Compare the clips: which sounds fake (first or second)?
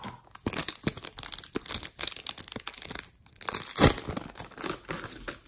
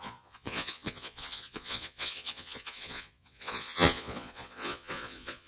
second